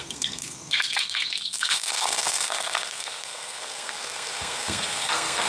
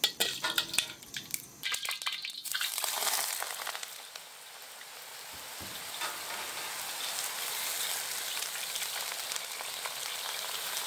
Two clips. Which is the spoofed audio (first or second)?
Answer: first